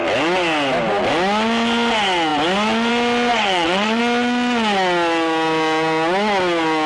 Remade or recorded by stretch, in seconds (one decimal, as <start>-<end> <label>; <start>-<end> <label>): 0.0-3.3 recorded; 3.3-4.0 remade; 4.0-6.9 recorded